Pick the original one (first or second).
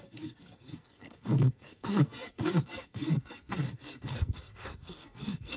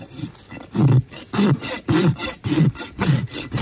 second